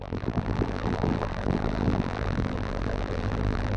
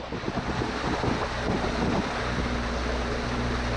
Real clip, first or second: second